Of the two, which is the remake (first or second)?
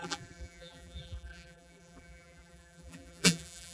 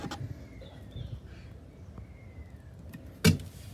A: first